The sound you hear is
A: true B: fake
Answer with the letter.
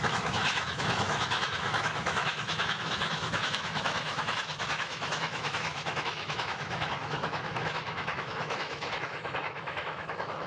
B